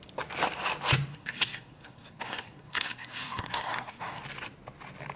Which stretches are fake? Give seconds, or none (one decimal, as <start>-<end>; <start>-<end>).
1.1-4.2